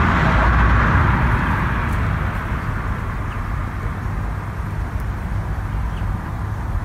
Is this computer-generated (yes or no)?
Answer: no